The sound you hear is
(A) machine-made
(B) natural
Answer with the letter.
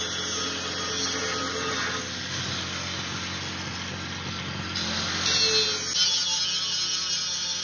B